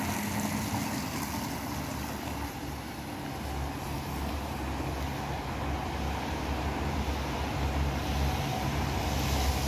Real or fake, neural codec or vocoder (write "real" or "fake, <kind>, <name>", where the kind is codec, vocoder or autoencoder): real